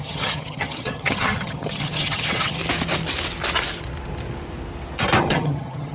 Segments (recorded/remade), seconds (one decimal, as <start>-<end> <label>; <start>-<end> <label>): 0.0-2.6 remade; 2.6-5.2 recorded; 5.2-5.9 remade